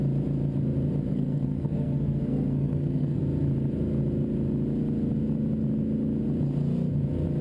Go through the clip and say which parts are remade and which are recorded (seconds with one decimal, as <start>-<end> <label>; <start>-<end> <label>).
0.0-1.1 recorded; 1.1-3.2 remade; 3.2-7.4 recorded